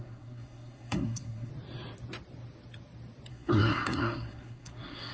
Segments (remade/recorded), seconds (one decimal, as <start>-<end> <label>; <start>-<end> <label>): 0.0-1.5 remade; 1.5-3.3 recorded; 3.3-5.1 remade

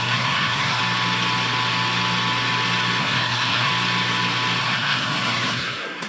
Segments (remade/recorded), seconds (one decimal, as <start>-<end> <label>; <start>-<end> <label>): 0.0-0.8 remade; 0.8-3.0 recorded; 3.0-3.7 remade; 3.7-4.6 recorded; 4.6-6.1 remade

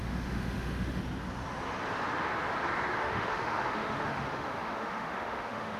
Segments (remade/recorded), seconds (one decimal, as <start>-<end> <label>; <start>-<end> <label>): 0.0-1.0 remade; 1.0-3.0 recorded; 3.0-5.8 remade